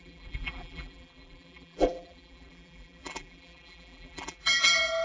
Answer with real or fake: fake